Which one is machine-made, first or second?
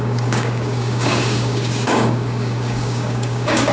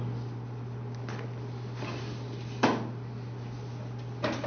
first